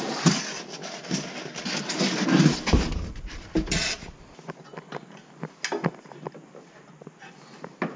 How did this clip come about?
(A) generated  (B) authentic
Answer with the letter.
B